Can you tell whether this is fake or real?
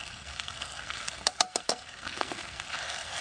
fake